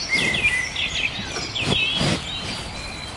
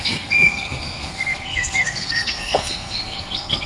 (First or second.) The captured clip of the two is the first